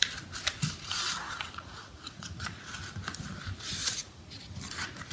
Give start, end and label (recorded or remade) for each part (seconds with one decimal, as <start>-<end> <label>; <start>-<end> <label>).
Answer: 0.0-1.2 recorded; 1.2-2.7 remade; 2.7-3.8 recorded; 3.8-4.5 remade; 4.5-5.1 recorded